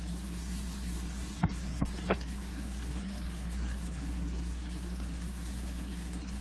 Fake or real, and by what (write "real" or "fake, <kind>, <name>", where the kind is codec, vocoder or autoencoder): fake, codec, SNAC